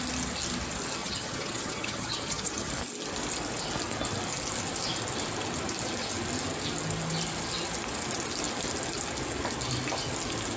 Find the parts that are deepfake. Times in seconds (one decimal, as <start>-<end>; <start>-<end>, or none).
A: 1.0-2.7